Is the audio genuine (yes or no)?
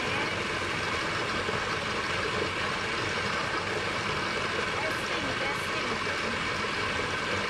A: yes